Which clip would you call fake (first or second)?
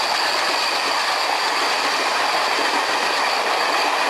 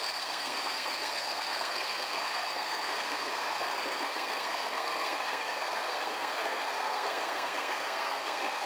second